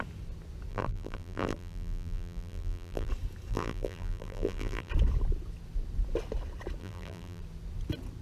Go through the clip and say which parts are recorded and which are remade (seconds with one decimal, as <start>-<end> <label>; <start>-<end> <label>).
0.0-0.7 recorded; 0.7-3.1 remade; 3.1-3.5 recorded; 3.5-4.9 remade; 4.9-6.8 recorded; 6.8-7.4 remade; 7.4-8.2 recorded